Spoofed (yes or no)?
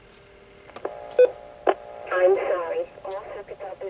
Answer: no